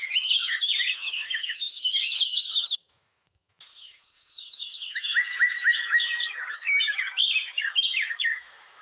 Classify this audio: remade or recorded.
remade